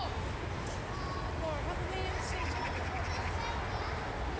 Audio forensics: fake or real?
real